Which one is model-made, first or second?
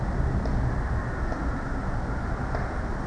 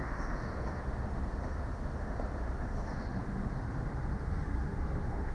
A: second